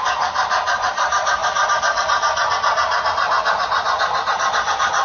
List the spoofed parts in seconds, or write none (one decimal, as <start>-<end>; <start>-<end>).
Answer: 0.0-1.4; 4.3-5.0